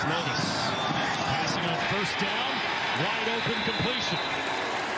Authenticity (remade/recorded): recorded